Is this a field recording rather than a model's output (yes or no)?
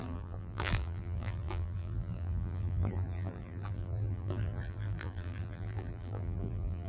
no